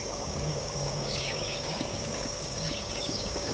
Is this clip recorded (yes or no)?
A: no